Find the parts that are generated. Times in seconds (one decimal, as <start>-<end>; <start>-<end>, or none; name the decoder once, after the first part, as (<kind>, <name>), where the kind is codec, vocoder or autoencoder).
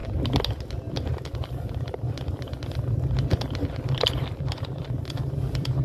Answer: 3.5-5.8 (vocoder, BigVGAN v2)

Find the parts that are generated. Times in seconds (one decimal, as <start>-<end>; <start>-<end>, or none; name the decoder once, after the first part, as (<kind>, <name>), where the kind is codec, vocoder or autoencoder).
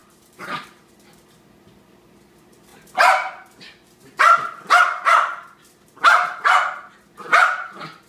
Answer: 0.0-0.9 (vocoder, BigVGAN v2)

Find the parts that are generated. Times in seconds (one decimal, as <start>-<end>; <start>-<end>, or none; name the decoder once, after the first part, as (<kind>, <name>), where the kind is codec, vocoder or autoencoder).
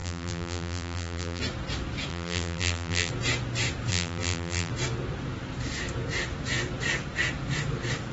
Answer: 0.0-1.4 (vocoder, BigVGAN v2); 2.1-3.1; 3.9-4.7